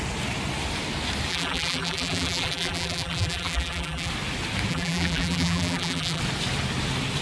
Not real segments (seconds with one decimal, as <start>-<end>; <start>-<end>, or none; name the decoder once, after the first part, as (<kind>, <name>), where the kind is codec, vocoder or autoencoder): 1.3-4.1 (vocoder, BigVGAN v2); 4.7-6.2